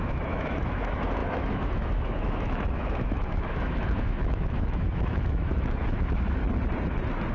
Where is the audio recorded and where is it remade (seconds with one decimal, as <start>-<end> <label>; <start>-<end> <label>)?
0.0-6.4 remade; 6.4-7.3 recorded